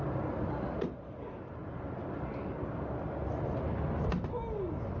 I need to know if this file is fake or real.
real